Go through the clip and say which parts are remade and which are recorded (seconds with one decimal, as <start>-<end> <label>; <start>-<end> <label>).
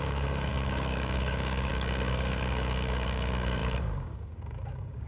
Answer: 0.0-5.1 remade